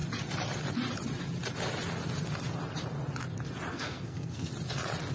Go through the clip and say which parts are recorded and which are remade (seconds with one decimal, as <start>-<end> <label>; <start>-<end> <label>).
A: 0.0-3.7 recorded; 3.7-4.5 remade; 4.5-5.1 recorded